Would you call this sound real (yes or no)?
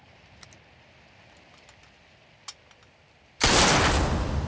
yes